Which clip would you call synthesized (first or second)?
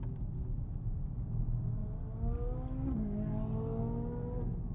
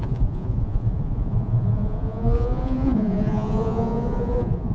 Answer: second